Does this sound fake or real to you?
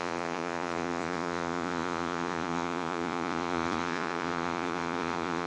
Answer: fake